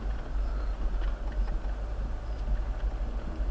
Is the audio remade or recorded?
recorded